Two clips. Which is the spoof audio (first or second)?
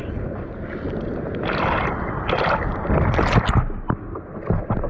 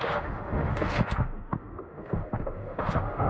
second